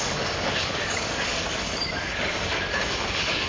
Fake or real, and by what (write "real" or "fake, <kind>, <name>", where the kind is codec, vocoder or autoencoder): fake, codec, DAC